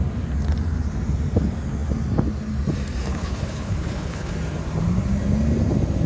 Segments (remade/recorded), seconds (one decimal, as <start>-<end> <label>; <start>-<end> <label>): 0.0-3.1 recorded; 3.1-4.3 remade; 4.3-6.1 recorded